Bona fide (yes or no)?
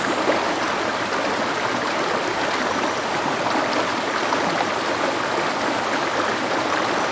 yes